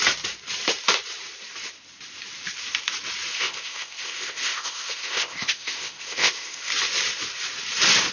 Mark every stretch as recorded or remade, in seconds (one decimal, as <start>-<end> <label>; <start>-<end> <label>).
0.0-3.3 recorded; 3.3-6.7 remade; 6.7-8.1 recorded

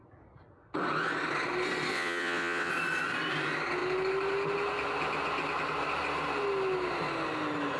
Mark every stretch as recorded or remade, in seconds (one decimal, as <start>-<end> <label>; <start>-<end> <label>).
0.0-1.9 recorded; 1.9-2.7 remade; 2.7-7.8 recorded

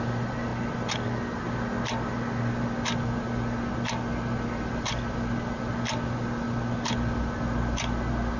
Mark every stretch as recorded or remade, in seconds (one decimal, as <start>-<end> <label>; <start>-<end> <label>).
0.0-8.4 recorded

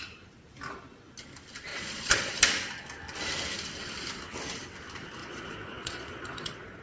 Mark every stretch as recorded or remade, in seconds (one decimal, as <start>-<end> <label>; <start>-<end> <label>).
0.0-1.7 recorded; 1.7-2.3 remade; 2.3-5.2 recorded; 5.2-6.8 remade